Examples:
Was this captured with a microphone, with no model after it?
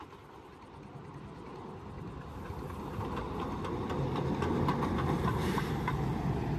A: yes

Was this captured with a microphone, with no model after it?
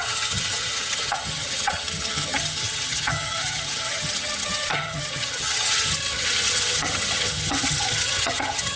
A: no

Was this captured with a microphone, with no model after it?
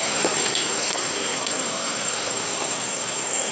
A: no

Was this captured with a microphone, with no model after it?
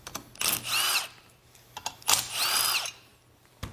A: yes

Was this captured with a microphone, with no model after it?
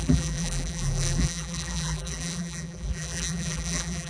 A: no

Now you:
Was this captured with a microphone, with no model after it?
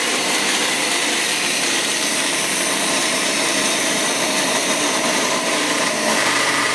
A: no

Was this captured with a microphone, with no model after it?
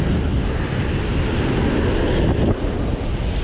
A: yes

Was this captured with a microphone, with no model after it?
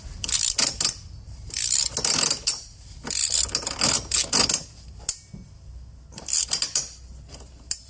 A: yes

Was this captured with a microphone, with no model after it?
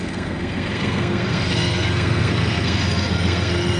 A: no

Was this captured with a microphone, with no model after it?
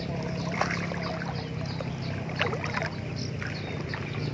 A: yes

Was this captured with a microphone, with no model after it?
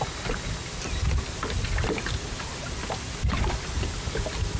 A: yes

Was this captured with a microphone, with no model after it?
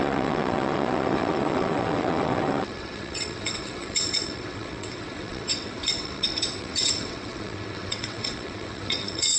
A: no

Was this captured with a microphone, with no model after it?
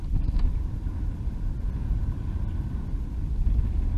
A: yes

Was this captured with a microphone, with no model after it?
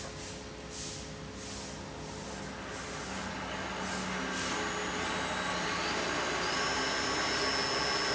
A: yes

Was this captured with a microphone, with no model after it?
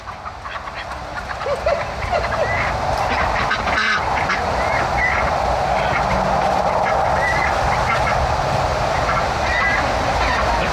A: yes